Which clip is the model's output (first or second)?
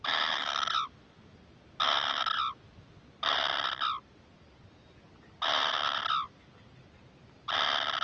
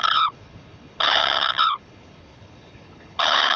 second